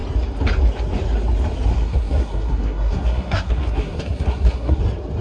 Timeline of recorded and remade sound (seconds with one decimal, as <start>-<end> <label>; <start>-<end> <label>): 0.0-1.7 recorded; 1.7-4.8 remade; 4.8-5.2 recorded